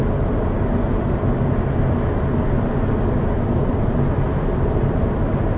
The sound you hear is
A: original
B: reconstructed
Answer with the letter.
A